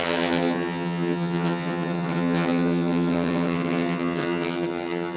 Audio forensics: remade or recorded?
remade